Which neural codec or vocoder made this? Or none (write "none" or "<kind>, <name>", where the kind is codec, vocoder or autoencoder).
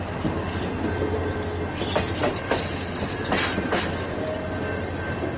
none